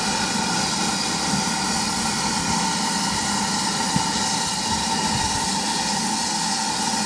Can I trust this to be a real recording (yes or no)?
yes